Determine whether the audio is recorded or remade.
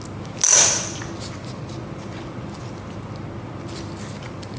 recorded